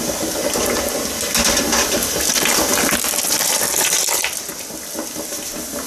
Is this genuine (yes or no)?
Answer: yes